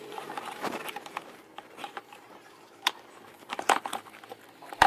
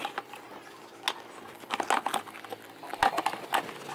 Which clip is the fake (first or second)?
first